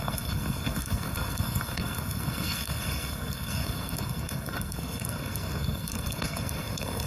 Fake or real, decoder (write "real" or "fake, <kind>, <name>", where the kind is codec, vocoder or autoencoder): fake, codec, SNAC